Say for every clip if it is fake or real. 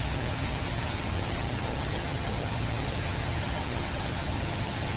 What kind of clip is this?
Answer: fake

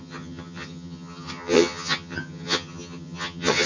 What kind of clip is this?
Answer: fake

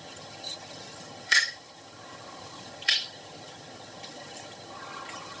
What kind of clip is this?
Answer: fake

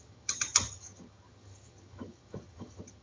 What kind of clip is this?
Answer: fake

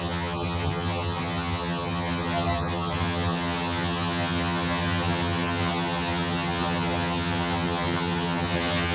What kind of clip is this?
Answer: fake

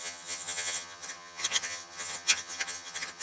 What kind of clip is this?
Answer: fake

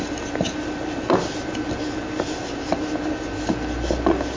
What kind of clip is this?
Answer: real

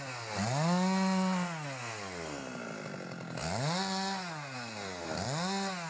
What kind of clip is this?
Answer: real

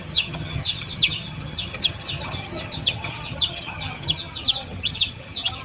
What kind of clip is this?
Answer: fake